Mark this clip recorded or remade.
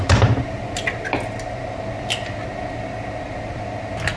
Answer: recorded